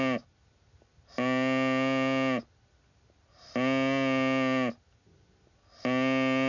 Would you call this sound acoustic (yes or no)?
yes